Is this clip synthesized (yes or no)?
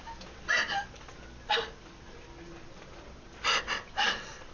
no